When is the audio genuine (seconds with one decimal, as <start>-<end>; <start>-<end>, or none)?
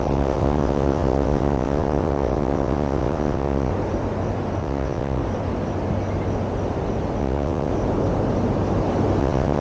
3.7-4.6; 5.2-7.2; 7.7-9.2